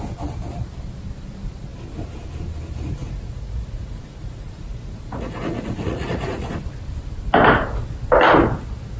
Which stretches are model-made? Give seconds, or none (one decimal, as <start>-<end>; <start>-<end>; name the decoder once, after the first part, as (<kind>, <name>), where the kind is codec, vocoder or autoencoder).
3.0-6.5 (vocoder, Vocos)